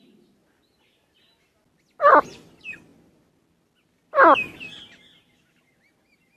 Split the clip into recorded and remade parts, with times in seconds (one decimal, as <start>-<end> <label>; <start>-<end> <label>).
0.0-6.4 recorded